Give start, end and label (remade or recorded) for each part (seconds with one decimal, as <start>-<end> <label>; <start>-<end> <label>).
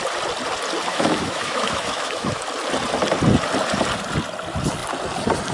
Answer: 0.0-0.9 recorded; 0.9-2.4 remade; 2.4-5.5 recorded